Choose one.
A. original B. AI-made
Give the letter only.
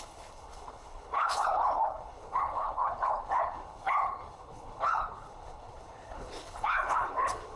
B